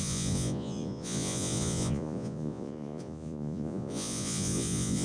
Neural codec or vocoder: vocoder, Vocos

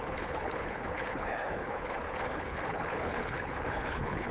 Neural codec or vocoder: codec, HILCodec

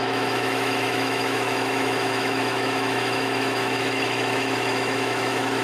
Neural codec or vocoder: autoencoder, DAC-VAE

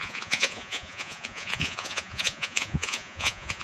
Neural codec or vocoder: vocoder, Vocos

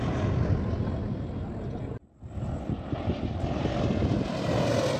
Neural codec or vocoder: none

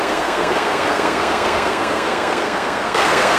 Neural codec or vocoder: codec, SNAC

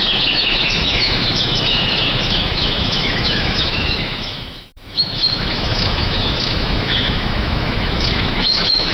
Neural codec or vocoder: autoencoder, DAC-VAE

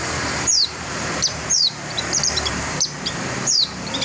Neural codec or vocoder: vocoder, BigVGAN v2